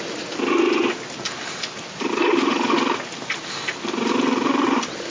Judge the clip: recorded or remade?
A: recorded